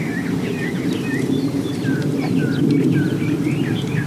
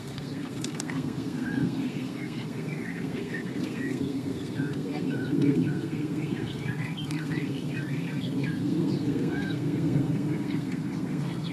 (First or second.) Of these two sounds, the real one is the first